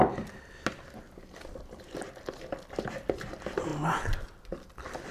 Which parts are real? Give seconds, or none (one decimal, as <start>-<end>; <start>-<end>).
0.0-5.1